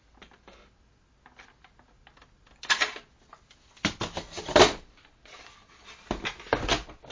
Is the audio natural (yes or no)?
yes